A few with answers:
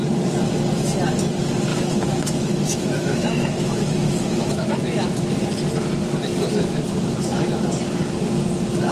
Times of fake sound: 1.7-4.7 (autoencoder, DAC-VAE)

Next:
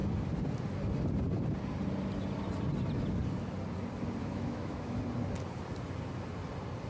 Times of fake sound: 4.2-5.0 (autoencoder, DAC-VAE)

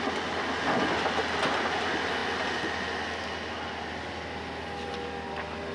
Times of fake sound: none

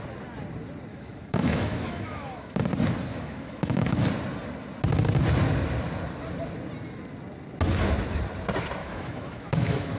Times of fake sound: 0.9-2.6 (autoencoder, DAC-VAE); 3.1-4.1; 8.8-10.0

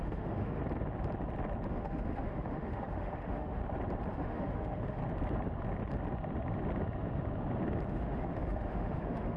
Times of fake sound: 0.0-0.6 (autoencoder, DAC-VAE); 1.7-3.6; 4.1-5.0; 7.9-9.4

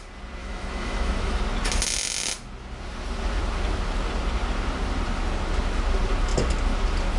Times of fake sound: 0.4-1.4 (autoencoder, DAC-VAE)